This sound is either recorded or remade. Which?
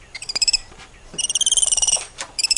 remade